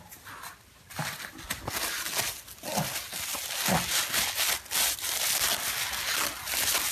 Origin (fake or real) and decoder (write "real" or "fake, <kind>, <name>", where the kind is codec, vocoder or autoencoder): real